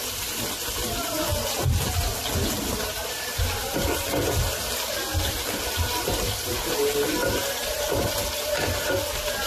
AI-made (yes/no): no